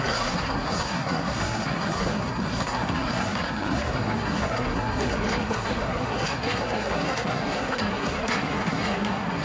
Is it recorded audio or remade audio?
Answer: remade